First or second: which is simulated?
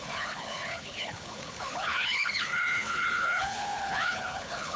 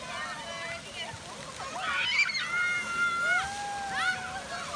first